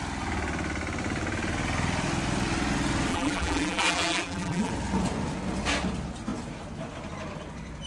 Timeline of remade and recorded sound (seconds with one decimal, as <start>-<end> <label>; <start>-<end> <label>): 0.0-3.1 recorded; 3.1-4.7 remade; 4.7-7.9 recorded